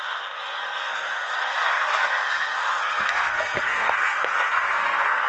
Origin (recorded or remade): remade